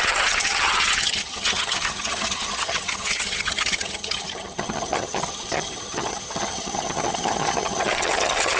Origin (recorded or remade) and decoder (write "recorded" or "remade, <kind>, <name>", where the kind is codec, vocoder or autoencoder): remade, vocoder, HiFi-GAN